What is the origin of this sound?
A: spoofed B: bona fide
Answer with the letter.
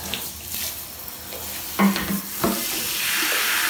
B